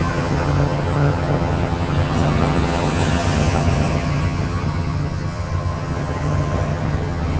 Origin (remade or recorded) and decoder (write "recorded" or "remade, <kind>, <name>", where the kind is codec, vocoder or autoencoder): remade, vocoder, HiFi-GAN